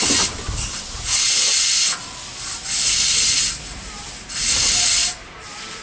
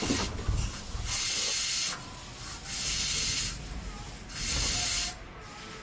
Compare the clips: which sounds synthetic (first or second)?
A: first